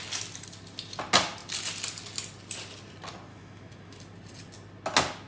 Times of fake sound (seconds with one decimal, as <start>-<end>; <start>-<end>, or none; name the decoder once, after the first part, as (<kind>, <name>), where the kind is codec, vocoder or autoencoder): 3.3-4.0 (autoencoder, DAC-VAE)